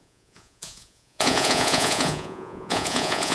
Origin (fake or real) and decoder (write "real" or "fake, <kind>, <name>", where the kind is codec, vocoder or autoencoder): fake, vocoder, Vocos